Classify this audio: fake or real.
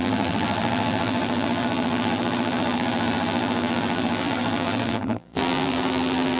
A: fake